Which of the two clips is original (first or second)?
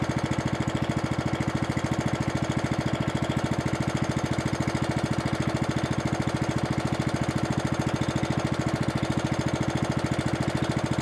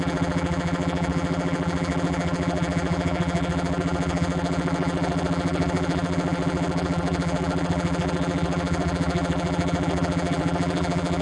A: first